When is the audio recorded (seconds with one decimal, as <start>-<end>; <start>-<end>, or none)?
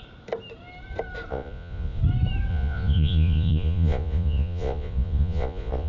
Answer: 0.0-1.3; 2.0-2.5